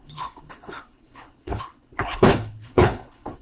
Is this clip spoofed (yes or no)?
yes